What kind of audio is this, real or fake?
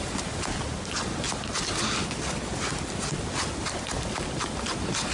real